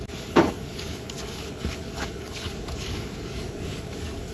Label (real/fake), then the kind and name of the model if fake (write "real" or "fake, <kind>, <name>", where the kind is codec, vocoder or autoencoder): fake, codec, DAC